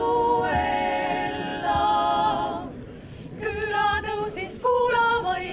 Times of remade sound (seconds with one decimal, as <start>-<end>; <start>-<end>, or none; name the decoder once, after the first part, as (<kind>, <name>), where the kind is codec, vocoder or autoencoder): none